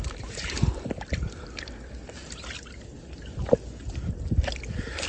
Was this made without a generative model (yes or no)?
yes